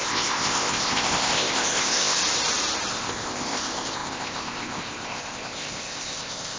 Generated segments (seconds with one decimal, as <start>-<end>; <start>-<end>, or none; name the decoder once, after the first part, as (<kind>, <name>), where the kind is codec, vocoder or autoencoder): 0.0-2.2 (codec, ZipCodec); 2.9-6.6